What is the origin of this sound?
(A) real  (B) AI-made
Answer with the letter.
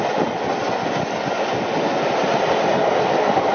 A